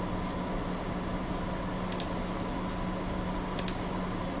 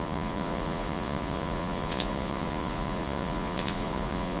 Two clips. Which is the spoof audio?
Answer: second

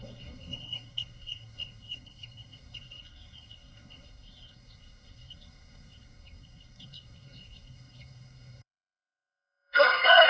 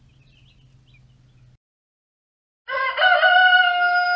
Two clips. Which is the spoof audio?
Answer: first